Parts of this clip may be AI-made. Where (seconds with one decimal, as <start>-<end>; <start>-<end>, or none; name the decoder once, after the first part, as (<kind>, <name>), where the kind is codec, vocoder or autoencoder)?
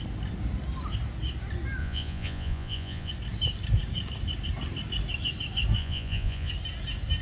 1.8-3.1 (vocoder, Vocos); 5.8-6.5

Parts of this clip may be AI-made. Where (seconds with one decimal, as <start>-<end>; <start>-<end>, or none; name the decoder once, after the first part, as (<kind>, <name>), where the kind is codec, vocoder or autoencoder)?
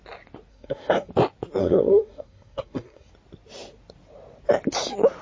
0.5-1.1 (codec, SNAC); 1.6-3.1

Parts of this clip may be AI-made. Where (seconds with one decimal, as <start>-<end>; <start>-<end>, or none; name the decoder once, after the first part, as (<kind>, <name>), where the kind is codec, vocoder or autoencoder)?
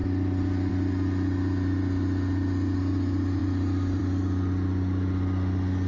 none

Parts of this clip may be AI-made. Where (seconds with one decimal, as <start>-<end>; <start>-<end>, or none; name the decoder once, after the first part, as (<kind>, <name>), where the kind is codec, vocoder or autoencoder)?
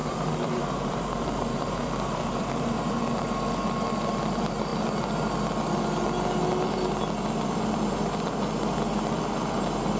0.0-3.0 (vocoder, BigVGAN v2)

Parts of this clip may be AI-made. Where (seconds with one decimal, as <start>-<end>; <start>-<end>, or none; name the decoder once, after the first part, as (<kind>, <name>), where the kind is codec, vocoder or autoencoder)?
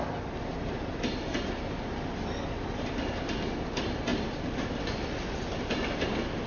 none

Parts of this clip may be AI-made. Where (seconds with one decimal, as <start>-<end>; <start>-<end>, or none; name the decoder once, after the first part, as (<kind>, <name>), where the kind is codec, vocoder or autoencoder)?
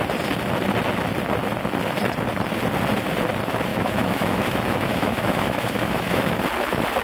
3.7-6.4 (autoencoder, DAC-VAE)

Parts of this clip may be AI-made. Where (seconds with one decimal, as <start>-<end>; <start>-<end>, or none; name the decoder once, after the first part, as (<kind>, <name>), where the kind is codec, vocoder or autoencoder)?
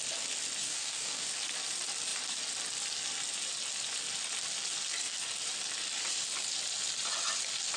0.6-1.3 (codec, DAC)